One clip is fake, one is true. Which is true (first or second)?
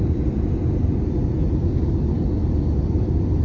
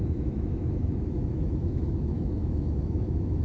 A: first